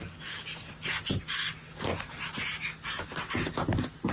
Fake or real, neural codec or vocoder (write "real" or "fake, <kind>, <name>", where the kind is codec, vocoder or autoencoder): real